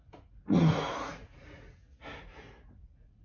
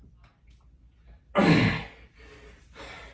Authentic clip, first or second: second